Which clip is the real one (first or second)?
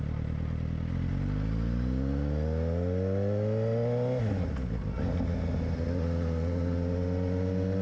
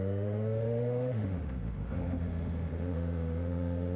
first